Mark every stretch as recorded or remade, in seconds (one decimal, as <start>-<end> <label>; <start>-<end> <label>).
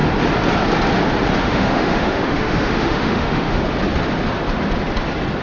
0.0-1.4 recorded; 1.4-3.6 remade; 3.6-5.4 recorded